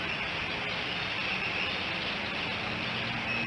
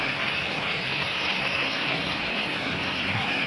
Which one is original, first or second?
first